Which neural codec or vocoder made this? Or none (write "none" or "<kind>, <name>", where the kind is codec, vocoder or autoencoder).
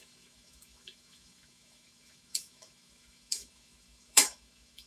autoencoder, DAC-VAE